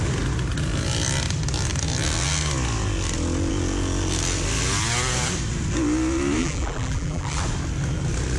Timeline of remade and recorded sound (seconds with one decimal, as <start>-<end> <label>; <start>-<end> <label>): 0.0-6.4 recorded; 6.4-7.4 remade; 7.4-8.4 recorded